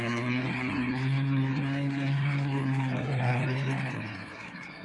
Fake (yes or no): yes